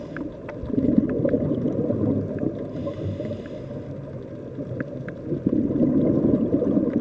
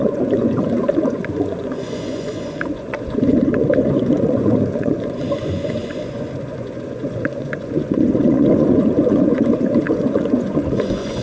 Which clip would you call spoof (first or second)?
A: second